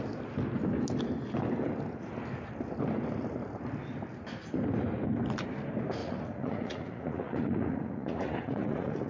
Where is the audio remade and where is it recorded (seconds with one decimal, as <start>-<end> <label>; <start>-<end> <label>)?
0.0-6.0 recorded; 6.0-9.1 remade